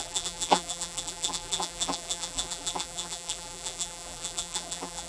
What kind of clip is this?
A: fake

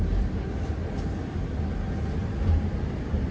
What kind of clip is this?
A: real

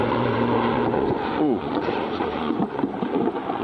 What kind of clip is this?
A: fake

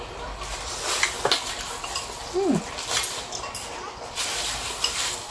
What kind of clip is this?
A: real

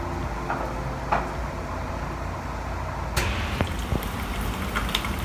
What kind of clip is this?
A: real